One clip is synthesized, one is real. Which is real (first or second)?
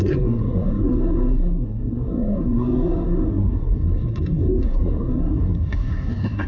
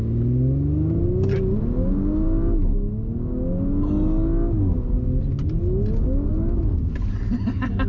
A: second